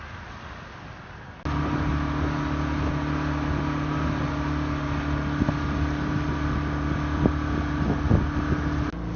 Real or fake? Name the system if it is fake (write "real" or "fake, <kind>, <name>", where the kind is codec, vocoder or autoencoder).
real